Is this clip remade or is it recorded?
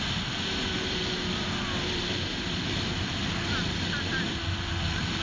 recorded